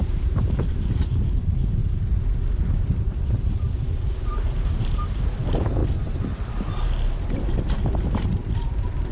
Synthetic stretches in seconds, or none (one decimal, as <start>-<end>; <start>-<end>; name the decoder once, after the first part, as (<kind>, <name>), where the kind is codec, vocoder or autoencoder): 0.0-5.8 (vocoder, BigVGAN v2); 6.5-9.1